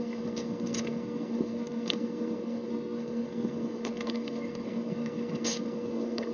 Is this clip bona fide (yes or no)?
no